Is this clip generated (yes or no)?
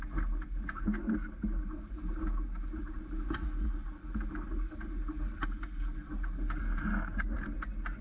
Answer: no